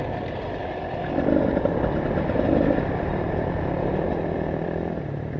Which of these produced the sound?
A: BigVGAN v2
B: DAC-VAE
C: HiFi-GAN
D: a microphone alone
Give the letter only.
D